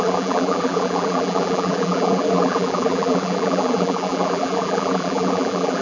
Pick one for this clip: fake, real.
fake